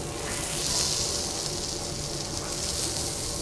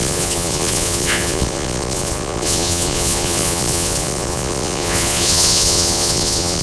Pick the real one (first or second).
first